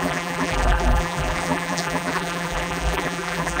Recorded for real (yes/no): no